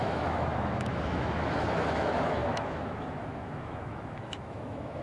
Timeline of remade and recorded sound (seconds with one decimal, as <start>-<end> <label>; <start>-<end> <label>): 0.0-5.0 remade